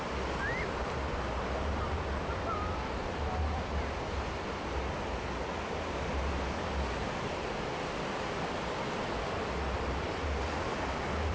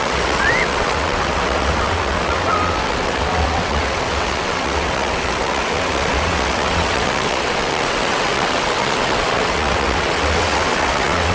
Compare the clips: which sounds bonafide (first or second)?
first